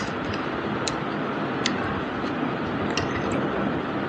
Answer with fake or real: real